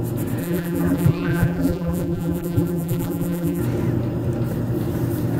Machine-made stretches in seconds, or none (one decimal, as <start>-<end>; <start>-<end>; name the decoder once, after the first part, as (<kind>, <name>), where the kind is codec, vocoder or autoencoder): 0.4-3.6 (vocoder, BigVGAN v2)